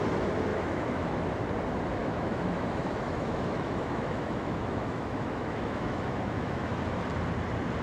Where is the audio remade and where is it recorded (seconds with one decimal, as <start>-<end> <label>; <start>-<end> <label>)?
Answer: 0.0-0.5 recorded; 0.5-1.0 remade; 1.0-2.0 recorded; 2.0-6.7 remade; 6.7-7.8 recorded